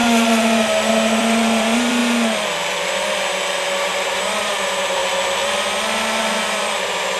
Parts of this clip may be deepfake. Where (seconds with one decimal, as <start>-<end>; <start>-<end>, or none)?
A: 0.9-2.0; 3.7-5.0; 6.2-7.2